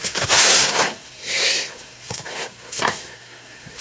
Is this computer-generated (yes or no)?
yes